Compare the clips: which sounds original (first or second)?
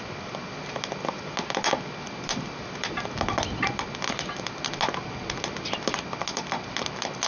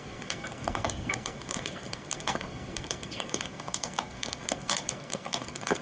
first